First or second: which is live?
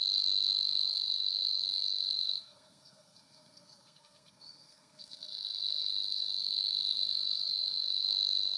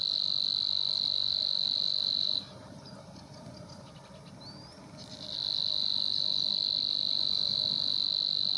second